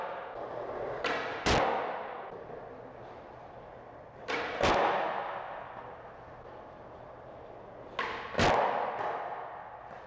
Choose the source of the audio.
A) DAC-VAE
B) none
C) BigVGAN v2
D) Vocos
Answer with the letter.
B